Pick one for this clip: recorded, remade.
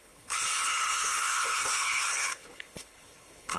remade